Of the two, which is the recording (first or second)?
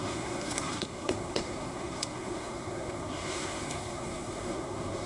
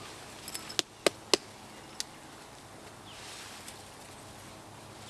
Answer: second